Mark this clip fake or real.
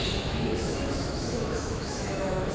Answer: fake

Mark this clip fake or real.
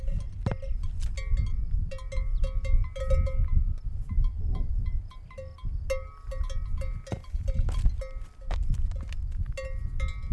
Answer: real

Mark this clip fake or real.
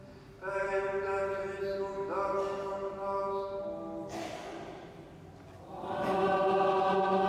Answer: real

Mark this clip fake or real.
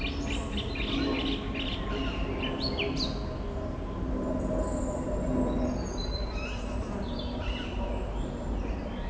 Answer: real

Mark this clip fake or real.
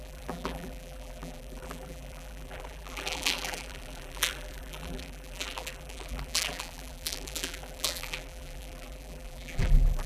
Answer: fake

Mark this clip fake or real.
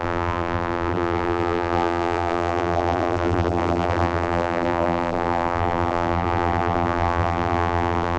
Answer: fake